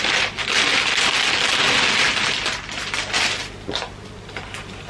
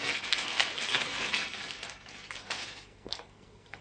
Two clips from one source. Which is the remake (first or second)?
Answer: second